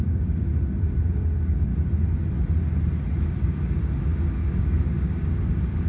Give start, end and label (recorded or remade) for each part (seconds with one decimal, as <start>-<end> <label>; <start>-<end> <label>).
0.0-0.5 remade; 0.5-1.1 recorded; 1.1-1.7 remade; 1.7-3.2 recorded; 3.2-5.9 remade